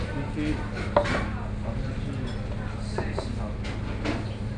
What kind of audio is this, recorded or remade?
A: recorded